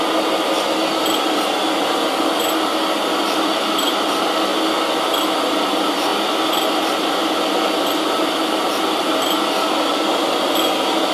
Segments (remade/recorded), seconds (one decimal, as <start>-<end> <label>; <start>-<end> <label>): 0.0-11.1 recorded